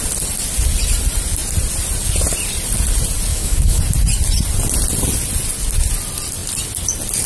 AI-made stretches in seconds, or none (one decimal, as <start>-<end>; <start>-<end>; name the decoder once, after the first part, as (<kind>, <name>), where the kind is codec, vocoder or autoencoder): 3.3-3.8 (autoencoder, DAC-VAE)